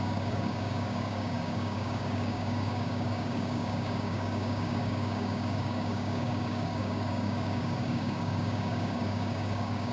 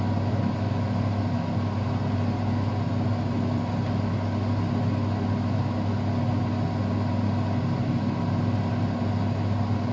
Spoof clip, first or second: first